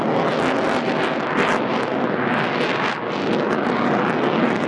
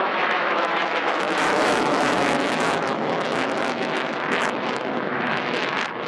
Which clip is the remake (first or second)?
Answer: second